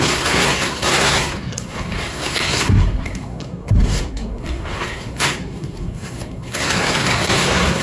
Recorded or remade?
remade